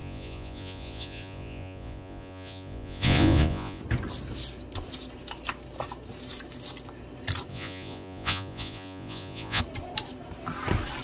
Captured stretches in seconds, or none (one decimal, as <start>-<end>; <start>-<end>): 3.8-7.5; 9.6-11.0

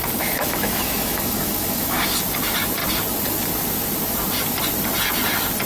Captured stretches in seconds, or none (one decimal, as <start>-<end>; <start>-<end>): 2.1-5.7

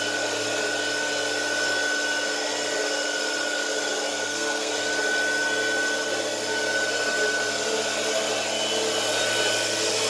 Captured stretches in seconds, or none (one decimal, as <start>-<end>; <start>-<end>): 0.0-4.1; 4.7-10.1